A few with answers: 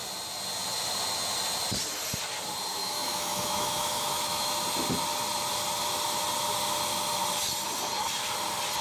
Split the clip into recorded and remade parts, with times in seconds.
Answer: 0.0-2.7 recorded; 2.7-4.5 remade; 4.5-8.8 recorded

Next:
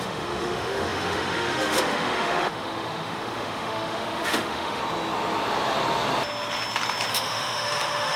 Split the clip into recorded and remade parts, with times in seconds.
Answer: 0.0-4.8 remade; 4.8-7.1 recorded; 7.1-8.2 remade

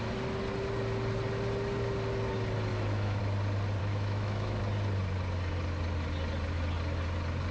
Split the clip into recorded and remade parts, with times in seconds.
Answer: 0.0-2.7 recorded; 2.7-3.2 remade; 3.2-3.8 recorded; 3.8-4.6 remade; 4.6-7.5 recorded